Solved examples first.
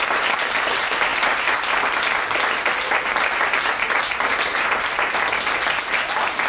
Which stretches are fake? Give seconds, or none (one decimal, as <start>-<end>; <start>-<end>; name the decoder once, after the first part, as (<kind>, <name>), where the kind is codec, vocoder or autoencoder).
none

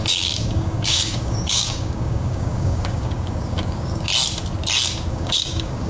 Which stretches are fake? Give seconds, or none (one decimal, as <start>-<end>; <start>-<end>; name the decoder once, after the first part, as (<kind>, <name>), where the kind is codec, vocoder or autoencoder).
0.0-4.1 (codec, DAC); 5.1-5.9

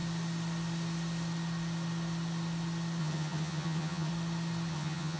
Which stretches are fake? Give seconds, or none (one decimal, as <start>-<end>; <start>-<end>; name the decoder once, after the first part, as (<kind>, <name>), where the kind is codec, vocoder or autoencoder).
3.0-4.1 (vocoder, HiFi-GAN); 4.7-5.2

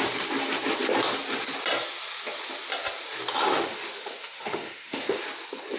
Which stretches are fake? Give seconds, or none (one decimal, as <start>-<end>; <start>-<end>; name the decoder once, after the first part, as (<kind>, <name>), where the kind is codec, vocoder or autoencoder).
3.5-5.2 (autoencoder, DAC-VAE)

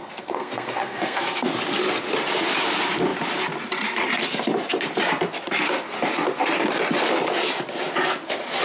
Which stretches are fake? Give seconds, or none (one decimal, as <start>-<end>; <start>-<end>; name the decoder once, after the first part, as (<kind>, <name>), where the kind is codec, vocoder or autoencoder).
0.0-1.5 (codec, SNAC)

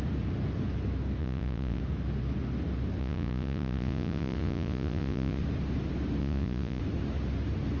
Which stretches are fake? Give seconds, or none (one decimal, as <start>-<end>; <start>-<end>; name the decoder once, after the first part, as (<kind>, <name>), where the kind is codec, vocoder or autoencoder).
1.2-1.8 (vocoder, Vocos); 3.0-5.4; 6.2-6.8

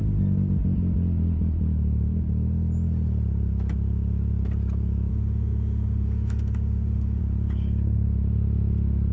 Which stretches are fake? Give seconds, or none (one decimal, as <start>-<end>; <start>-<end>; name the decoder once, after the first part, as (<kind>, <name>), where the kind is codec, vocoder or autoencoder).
5.1-7.2 (autoencoder, DAC-VAE)

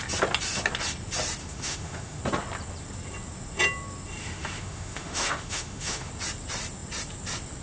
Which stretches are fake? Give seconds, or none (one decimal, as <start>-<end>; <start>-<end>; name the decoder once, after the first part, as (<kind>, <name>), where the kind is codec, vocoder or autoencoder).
1.4-2.2 (autoencoder, DAC-VAE); 4.2-6.1